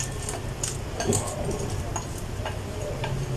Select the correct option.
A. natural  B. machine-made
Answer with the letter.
A